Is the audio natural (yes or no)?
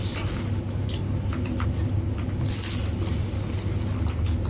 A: yes